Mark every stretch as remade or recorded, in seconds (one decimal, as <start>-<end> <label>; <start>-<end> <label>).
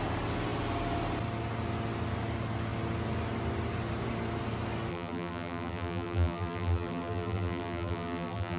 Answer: 0.0-4.9 recorded; 4.9-8.6 remade